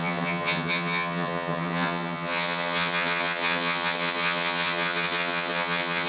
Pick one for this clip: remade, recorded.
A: remade